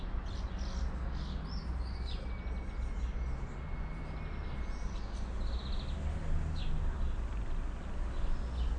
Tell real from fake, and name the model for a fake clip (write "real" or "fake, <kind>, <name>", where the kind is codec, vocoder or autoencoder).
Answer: real